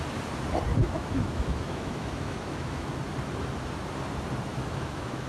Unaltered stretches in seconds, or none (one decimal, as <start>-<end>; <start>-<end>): 0.0-0.8; 2.9-4.5

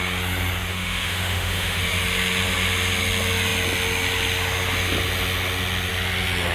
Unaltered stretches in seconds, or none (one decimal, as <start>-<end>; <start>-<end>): 0.0-0.7; 1.8-6.5

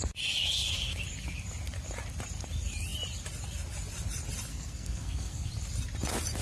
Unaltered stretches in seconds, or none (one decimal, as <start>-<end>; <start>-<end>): 0.0-4.5; 5.5-6.4

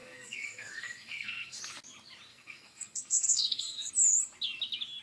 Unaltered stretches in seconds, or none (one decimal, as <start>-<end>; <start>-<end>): 1.6-2.3; 3.9-5.0

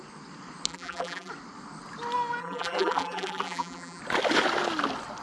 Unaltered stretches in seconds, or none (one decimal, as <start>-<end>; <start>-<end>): 0.0-0.7; 1.3-2.4; 4.0-5.2

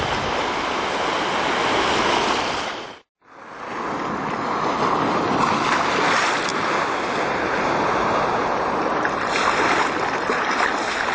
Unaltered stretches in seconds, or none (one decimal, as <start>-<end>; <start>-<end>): 0.0-6.5; 9.1-11.1

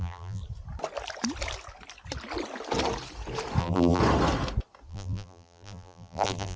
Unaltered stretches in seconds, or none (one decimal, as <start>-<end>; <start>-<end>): 0.4-3.6; 4.0-4.9